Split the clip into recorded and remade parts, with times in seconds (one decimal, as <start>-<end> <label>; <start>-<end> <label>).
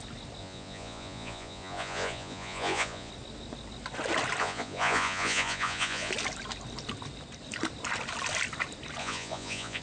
0.0-0.4 recorded; 0.4-3.1 remade; 3.1-4.4 recorded; 4.4-6.1 remade; 6.1-9.0 recorded; 9.0-9.8 remade